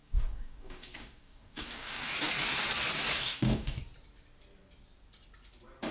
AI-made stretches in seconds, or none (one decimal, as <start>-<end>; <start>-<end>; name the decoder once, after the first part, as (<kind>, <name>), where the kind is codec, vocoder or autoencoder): 0.0-2.1 (codec, DAC); 3.2-3.8